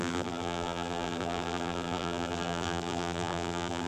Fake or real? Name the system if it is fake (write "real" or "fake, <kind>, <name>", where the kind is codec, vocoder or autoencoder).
fake, vocoder, BigVGAN v2